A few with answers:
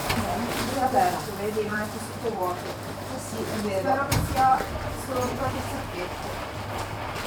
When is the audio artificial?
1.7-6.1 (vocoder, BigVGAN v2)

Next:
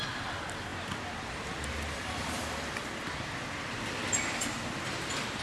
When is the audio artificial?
0.7-3.9 (vocoder, BigVGAN v2)

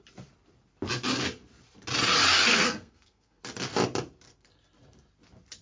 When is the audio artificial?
2.5-3.4 (codec, SNAC)

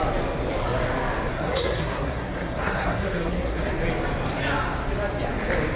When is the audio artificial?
1.3-3.7 (codec, SNAC)

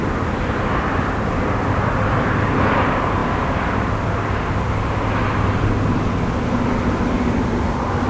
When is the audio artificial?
none

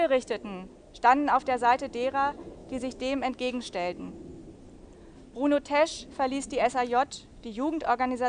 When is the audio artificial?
2.6-4.1 (autoencoder, DAC-VAE); 7.3-7.8

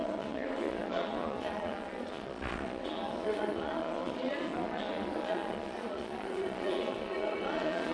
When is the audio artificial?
0.0-7.9 (vocoder, Vocos)